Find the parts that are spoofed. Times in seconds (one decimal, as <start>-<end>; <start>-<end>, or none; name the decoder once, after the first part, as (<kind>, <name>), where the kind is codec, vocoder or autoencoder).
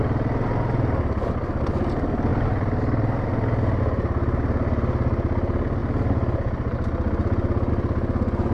2.3-3.8 (vocoder, BigVGAN v2)